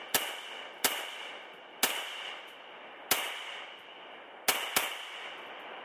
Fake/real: real